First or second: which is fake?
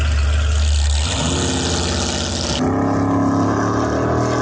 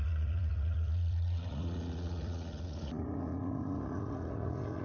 second